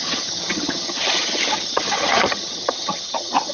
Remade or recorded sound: remade